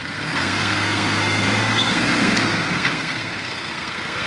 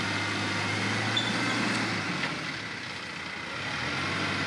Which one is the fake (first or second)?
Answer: first